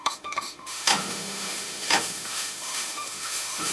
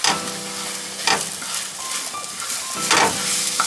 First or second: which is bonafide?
second